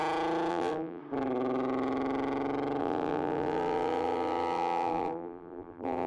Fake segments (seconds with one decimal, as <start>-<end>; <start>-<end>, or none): 0.5-1.0; 2.8-6.1

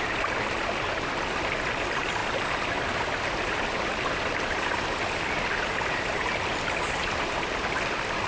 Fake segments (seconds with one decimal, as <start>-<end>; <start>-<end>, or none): none

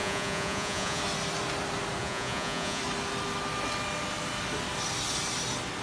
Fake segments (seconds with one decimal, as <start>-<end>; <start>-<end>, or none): 0.0-1.0; 2.0-2.8